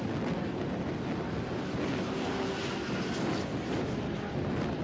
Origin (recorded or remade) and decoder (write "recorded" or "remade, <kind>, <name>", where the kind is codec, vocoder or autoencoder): recorded